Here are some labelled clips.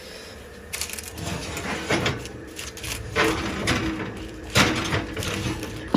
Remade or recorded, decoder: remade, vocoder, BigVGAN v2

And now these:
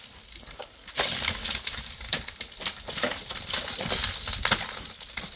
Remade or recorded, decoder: recorded